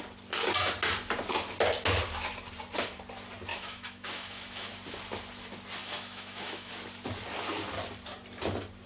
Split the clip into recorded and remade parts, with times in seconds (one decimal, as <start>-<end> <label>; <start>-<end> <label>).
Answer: 0.0-3.5 recorded; 3.5-4.7 remade; 4.7-5.8 recorded; 5.8-6.7 remade; 6.7-8.9 recorded